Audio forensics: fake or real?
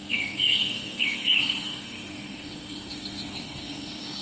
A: fake